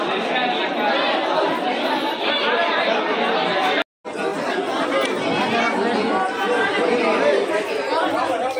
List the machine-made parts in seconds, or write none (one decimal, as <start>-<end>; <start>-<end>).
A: none